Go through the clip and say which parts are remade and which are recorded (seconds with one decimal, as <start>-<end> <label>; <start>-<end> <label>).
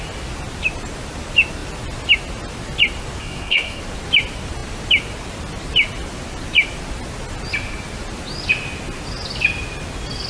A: 0.0-3.2 recorded; 3.2-3.8 remade; 3.8-10.3 recorded